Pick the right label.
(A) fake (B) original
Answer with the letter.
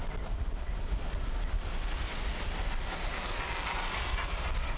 B